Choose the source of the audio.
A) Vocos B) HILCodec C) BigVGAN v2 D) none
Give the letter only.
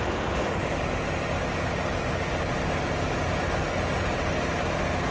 D